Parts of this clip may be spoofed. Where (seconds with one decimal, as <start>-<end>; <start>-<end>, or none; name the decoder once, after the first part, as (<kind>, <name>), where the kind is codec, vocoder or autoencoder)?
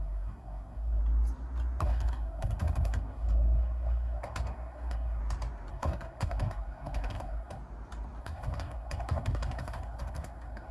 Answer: 0.0-1.0 (codec, SNAC); 1.8-5.2; 5.7-7.6; 8.2-10.7